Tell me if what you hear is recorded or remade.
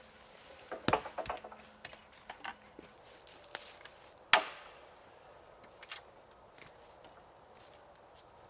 recorded